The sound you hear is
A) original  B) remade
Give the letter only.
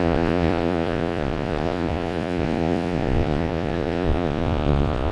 B